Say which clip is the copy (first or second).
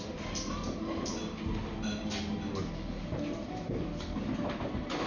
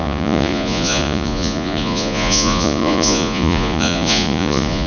second